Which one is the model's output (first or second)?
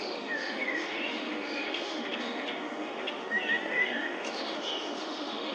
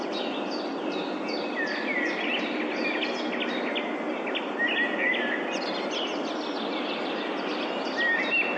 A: first